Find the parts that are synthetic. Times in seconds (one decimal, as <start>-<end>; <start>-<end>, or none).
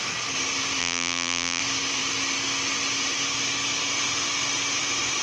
0.8-1.6